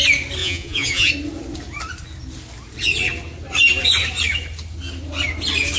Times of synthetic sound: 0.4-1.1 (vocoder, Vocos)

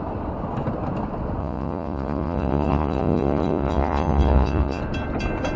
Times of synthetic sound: 1.4-4.8 (vocoder, Vocos)

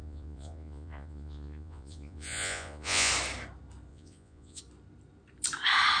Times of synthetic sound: 0.0-3.1 (vocoder, Vocos); 3.9-4.6

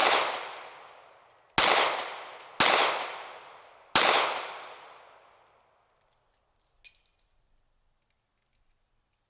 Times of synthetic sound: none

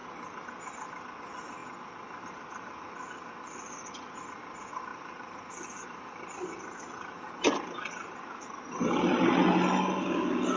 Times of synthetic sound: none

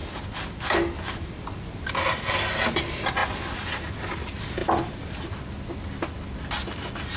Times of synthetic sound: none

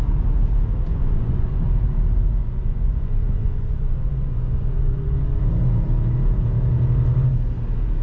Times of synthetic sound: 0.9-1.6 (vocoder, Vocos); 2.4-5.4

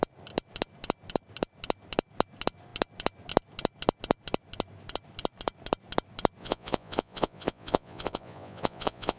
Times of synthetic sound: 6.4-9.2 (vocoder, Vocos)